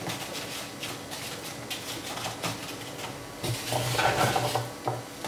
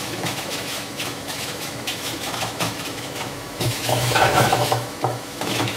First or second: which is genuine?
first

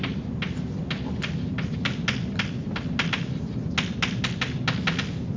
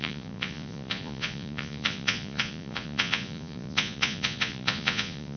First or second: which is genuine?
first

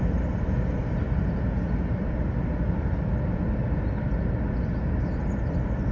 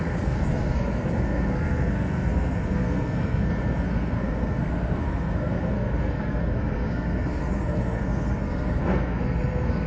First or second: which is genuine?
first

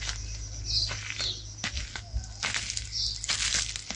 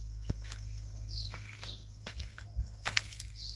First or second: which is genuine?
first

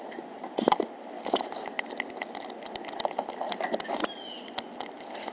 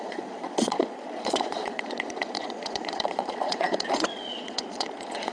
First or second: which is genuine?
first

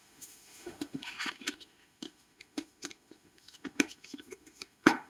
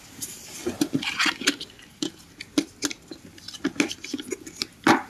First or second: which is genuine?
second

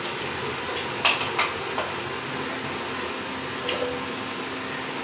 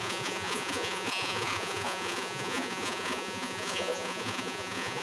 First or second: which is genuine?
first